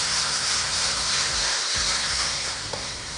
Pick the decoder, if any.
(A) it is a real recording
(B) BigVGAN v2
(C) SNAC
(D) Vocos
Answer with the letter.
C